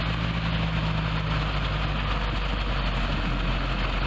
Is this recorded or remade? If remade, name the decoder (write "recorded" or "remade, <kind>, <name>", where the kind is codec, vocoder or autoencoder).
recorded